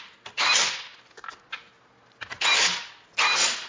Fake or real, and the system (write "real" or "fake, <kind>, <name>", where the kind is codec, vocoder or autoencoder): real